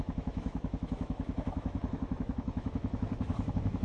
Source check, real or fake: fake